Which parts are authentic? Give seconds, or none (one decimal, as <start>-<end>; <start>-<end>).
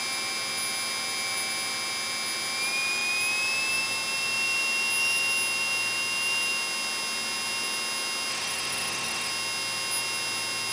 0.0-8.3; 9.3-10.7